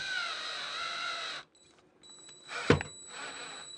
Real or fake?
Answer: real